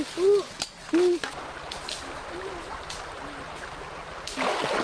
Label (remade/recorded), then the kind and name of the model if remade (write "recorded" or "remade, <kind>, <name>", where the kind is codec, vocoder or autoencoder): recorded